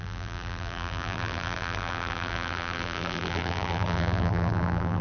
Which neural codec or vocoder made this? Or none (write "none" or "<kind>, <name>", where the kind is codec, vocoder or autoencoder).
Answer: vocoder, BigVGAN v2